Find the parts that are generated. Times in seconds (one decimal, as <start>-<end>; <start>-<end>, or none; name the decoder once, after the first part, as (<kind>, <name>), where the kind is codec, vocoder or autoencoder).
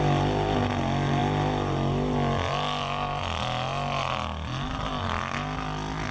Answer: none